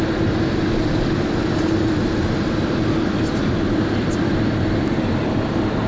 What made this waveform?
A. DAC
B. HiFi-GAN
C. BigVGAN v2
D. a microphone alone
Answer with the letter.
C